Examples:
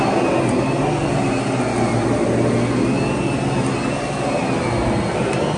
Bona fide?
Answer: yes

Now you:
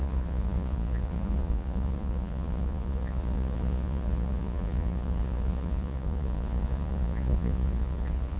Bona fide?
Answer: no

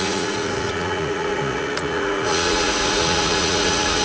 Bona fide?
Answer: no